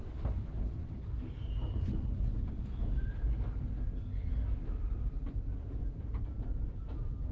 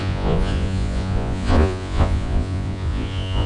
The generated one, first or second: second